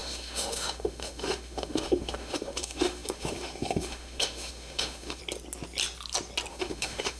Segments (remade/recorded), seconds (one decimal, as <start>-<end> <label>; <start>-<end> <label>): 0.0-5.2 remade; 5.2-6.5 recorded; 6.5-7.2 remade